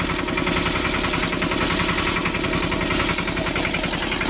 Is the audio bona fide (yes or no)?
yes